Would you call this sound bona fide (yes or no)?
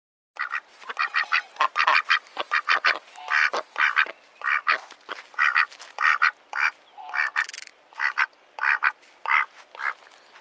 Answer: yes